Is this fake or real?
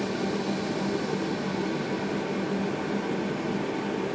real